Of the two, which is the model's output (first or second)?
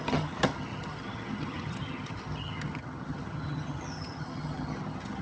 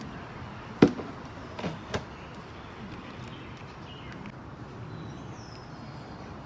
first